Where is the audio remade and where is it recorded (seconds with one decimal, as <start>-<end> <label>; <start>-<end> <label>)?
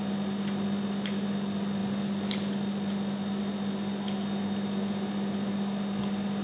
0.0-6.4 recorded